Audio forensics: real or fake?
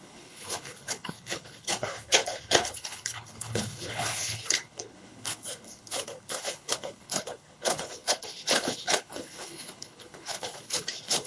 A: fake